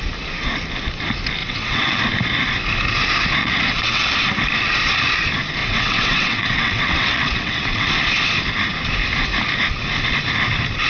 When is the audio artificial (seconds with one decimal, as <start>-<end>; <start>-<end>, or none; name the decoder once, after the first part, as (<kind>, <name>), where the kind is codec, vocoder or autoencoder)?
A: 1.4-2.0 (vocoder, WaveNeXt); 3.4-4.1; 5.6-7.9